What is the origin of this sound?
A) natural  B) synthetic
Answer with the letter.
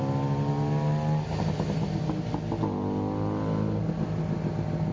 A